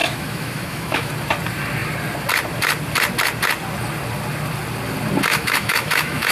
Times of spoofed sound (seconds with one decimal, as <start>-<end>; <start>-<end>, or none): 0.0-1.1; 5.3-6.3